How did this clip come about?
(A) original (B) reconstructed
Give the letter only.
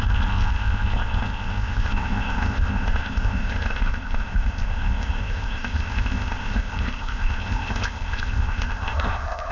B